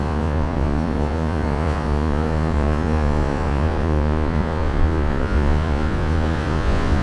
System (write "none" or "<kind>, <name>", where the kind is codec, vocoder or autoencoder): vocoder, Vocos